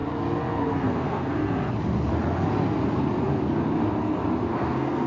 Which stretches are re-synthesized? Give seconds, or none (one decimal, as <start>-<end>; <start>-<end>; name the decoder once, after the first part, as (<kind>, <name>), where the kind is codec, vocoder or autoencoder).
0.6-1.4 (codec, SNAC); 4.5-5.1

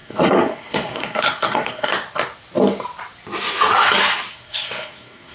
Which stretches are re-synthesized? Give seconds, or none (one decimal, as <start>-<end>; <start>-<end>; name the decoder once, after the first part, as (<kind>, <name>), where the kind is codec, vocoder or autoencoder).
0.0-1.9 (codec, SNAC); 4.3-5.3